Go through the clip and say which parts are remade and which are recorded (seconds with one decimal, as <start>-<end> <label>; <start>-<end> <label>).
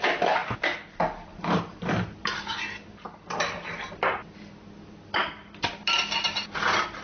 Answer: 0.0-7.0 recorded